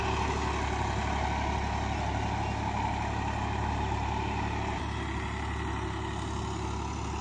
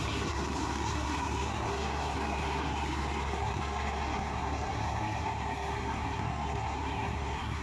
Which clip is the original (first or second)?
first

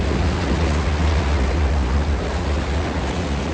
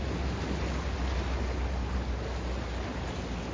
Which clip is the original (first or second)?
second